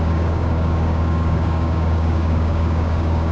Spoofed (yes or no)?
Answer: yes